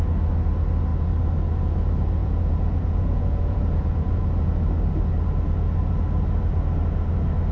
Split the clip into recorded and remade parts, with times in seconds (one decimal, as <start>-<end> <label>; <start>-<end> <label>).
0.0-2.2 recorded; 2.2-4.2 remade; 4.2-7.5 recorded